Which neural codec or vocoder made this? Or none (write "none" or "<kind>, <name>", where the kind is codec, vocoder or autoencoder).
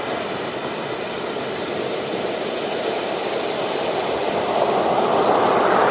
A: none